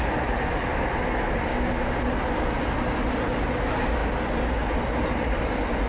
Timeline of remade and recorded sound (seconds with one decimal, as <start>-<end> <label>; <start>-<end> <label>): 0.0-1.5 recorded; 1.5-2.0 remade; 2.0-5.9 recorded

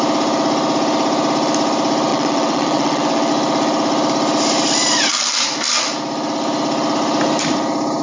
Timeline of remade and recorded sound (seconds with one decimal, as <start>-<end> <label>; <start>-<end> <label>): 0.0-2.1 recorded; 2.1-3.3 remade; 3.3-8.0 recorded